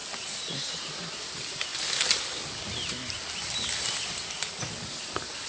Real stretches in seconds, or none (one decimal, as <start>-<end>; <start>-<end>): 0.0-5.5